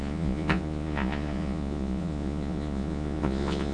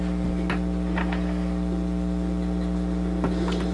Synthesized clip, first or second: first